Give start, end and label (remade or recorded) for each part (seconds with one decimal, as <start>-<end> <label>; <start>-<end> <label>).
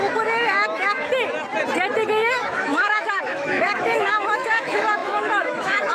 0.0-1.1 remade; 1.1-2.1 recorded; 2.1-5.9 remade